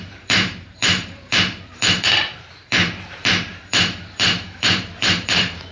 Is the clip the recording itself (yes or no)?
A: no